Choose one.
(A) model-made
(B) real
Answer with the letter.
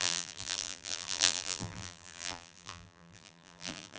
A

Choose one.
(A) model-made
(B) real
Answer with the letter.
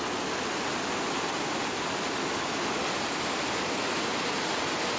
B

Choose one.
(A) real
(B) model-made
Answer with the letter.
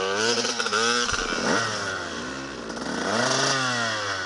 A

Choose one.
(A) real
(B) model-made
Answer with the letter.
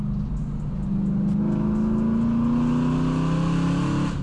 A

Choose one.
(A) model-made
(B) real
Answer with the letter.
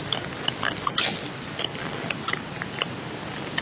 B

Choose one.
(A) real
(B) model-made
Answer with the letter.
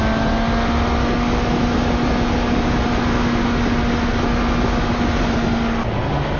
A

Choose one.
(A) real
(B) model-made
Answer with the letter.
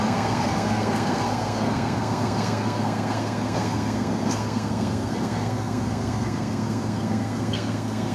B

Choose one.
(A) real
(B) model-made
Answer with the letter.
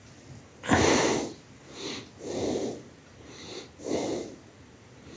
A